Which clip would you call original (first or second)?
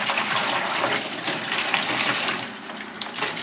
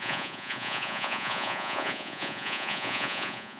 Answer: first